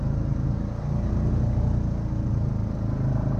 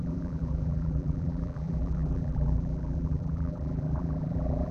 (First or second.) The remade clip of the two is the second